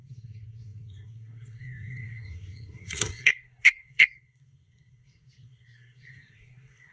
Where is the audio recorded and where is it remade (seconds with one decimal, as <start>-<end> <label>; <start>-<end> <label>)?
0.0-6.9 remade